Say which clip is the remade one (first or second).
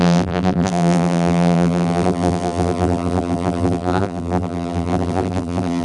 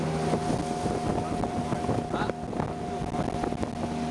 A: first